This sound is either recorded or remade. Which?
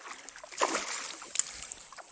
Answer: recorded